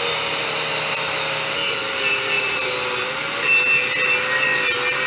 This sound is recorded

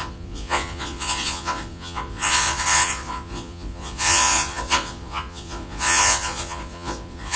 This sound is remade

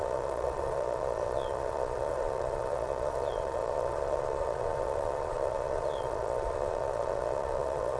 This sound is remade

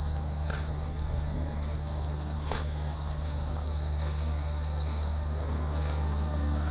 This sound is remade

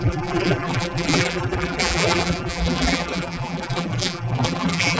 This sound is remade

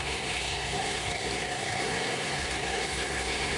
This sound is remade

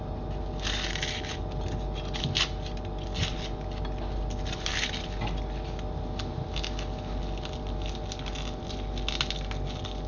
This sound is recorded